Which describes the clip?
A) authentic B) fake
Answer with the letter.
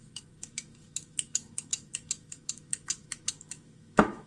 B